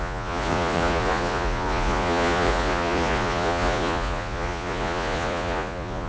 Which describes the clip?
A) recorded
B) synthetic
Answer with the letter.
B